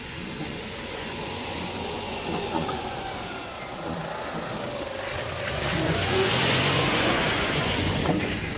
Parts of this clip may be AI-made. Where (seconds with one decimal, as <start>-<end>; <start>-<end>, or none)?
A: 0.0-4.0; 5.3-8.6